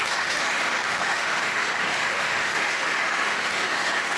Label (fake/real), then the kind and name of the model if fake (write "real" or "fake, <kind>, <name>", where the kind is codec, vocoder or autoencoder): fake, autoencoder, DAC-VAE